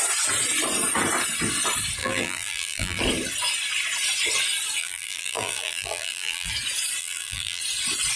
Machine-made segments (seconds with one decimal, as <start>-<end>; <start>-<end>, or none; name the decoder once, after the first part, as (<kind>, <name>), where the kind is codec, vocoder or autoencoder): 2.0-3.0 (vocoder, BigVGAN v2); 4.8-6.5; 7.0-7.6